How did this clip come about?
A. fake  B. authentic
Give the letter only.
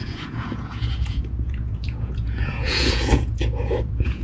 A